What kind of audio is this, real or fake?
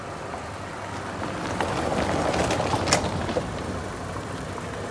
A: real